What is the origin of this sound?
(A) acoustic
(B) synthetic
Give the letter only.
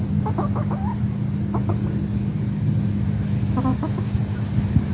A